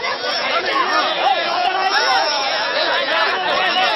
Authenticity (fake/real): fake